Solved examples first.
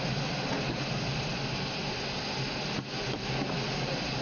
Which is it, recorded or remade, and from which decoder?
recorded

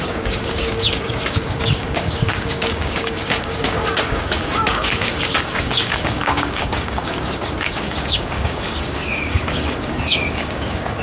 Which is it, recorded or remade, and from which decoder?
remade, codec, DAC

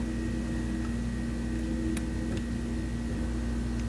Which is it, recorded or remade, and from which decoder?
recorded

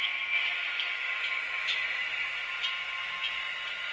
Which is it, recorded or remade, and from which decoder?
recorded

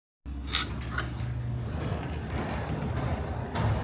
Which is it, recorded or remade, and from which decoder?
recorded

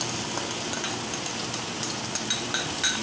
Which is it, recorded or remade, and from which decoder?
recorded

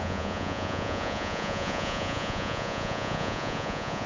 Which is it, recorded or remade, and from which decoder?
remade, vocoder, Vocos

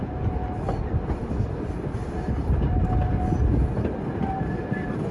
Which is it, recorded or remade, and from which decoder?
recorded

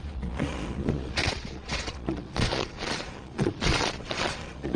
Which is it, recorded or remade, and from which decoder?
remade, vocoder, Vocos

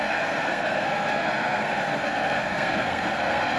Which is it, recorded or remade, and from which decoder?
remade, codec, SNAC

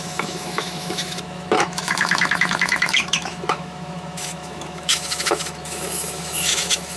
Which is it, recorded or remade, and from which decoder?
remade, autoencoder, DAC-VAE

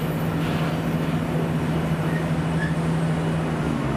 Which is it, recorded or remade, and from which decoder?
recorded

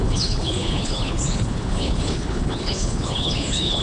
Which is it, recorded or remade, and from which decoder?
remade, codec, HILCodec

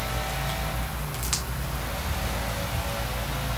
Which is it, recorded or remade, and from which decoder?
recorded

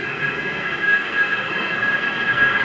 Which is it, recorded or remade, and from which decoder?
remade, codec, SNAC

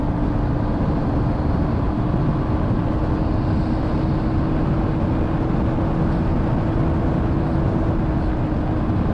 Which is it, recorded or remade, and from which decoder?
recorded